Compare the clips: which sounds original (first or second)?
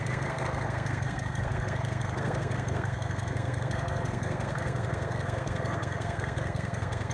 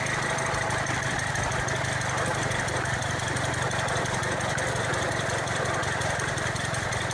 second